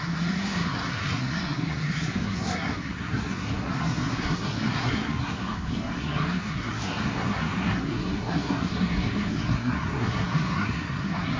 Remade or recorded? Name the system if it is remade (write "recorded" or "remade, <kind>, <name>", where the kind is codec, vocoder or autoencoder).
remade, codec, SNAC